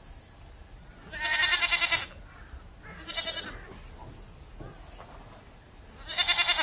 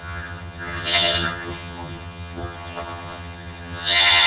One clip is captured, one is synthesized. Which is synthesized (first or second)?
second